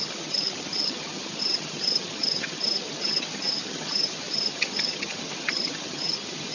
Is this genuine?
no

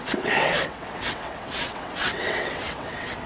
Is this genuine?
no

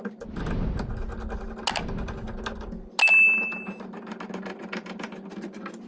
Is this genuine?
yes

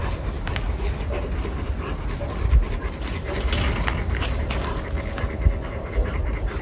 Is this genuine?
yes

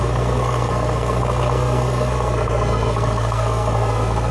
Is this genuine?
no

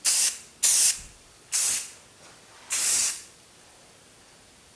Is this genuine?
yes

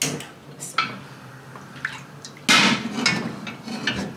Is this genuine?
yes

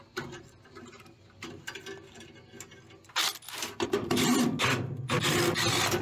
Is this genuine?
yes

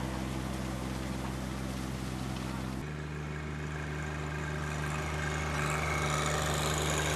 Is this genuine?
yes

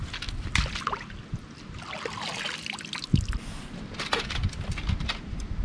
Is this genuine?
yes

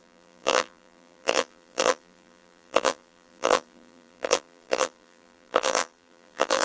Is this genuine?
no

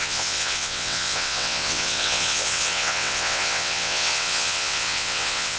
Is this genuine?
no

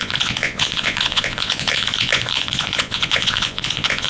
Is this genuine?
no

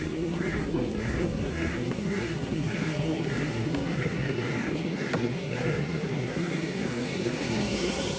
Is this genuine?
no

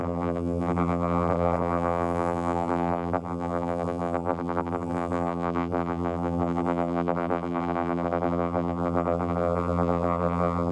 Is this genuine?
no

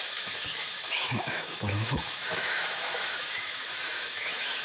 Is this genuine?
no